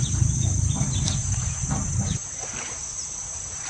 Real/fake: real